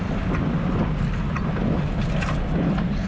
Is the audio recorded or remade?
recorded